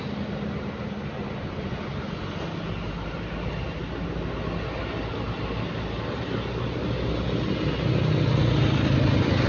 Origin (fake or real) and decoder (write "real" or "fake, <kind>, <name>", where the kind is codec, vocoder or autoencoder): real